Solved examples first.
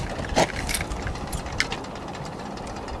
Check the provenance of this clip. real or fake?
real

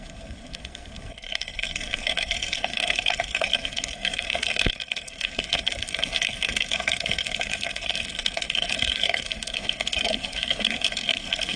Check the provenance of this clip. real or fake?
fake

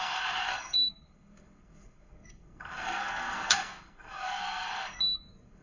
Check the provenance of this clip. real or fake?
fake